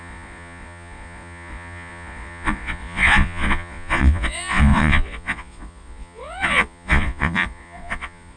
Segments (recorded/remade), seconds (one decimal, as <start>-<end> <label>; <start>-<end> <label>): 0.0-8.4 remade